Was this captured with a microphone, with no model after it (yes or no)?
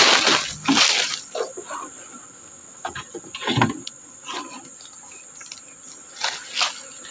yes